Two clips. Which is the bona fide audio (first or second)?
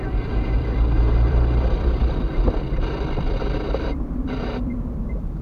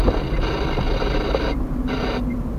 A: second